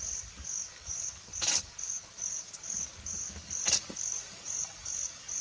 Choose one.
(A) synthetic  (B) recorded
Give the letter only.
A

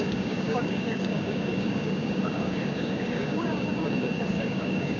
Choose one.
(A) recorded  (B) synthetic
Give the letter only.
B